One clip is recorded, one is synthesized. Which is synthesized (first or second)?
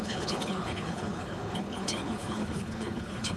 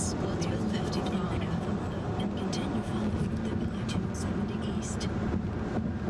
first